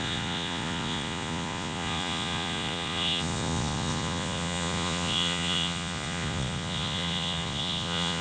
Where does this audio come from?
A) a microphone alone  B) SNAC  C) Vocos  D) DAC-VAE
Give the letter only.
C